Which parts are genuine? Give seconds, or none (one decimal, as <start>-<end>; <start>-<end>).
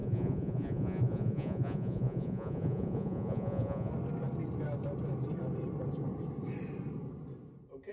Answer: 3.9-7.9